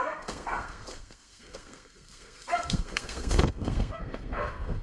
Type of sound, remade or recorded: remade